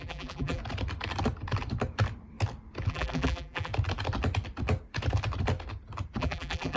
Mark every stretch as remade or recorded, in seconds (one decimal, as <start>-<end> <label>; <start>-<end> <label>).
0.0-0.6 remade; 0.6-2.9 recorded; 2.9-3.7 remade; 3.7-6.2 recorded; 6.2-6.8 remade